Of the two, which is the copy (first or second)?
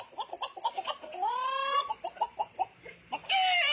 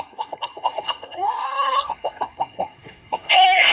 second